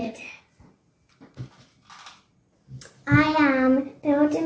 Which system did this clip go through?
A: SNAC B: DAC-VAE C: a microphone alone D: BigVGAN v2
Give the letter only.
C